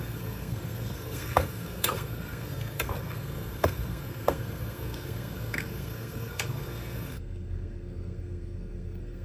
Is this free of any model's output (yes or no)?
no